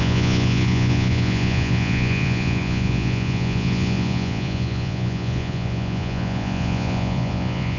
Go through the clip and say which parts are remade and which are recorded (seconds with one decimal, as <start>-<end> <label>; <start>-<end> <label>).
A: 0.0-7.8 remade